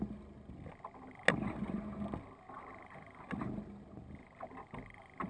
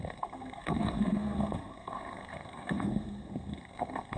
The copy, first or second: second